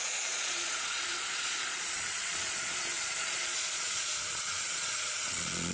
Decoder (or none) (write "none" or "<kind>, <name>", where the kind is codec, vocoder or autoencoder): vocoder, Vocos